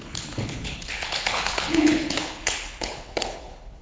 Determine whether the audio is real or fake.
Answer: fake